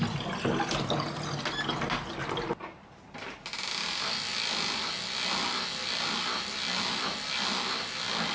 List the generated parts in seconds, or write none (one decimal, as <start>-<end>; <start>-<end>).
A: none